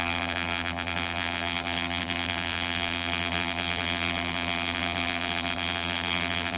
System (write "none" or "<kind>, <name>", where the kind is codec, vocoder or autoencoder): vocoder, BigVGAN v2